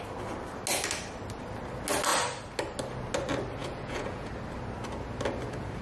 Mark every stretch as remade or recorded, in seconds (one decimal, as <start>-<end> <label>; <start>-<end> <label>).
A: 0.0-3.6 recorded; 3.6-4.3 remade; 4.3-5.8 recorded